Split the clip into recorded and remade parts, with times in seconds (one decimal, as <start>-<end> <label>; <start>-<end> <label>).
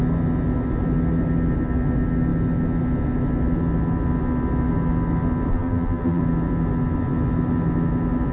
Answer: 0.0-5.5 recorded; 5.5-6.2 remade; 6.2-8.3 recorded